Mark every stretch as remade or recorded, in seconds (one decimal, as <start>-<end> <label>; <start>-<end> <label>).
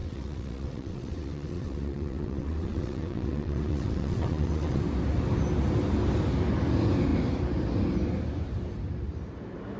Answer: 0.0-4.8 remade; 4.8-9.8 recorded